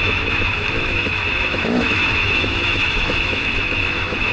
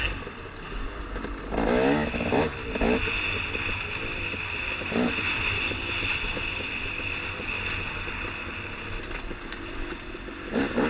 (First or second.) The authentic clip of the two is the second